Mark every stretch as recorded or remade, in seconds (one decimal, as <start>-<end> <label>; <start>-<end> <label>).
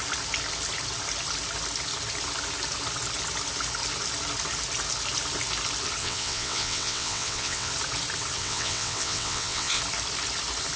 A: 0.0-6.0 recorded; 6.0-7.7 remade; 7.7-8.4 recorded; 8.4-9.8 remade; 9.8-10.8 recorded